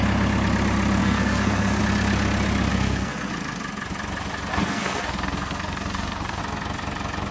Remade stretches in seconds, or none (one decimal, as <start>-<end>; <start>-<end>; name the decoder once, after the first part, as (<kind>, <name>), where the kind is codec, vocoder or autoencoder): 1.0-1.8 (codec, SNAC); 2.7-3.3; 4.5-6.4